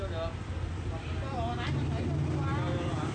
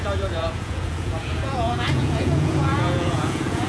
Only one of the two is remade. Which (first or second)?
second